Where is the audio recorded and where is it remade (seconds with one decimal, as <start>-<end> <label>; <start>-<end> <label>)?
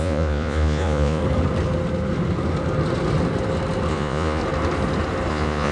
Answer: 0.0-1.2 remade; 1.2-3.9 recorded; 3.9-4.4 remade; 4.4-5.3 recorded; 5.3-5.7 remade